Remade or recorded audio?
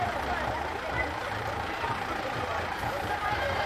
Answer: remade